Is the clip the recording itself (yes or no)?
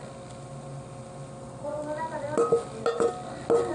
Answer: yes